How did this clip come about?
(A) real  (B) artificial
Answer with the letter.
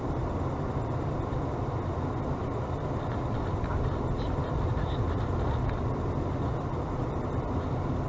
B